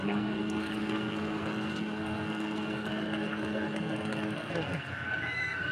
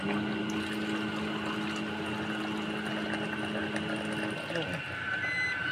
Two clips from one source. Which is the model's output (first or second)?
first